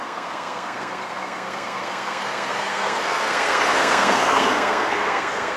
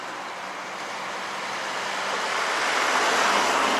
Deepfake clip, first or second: first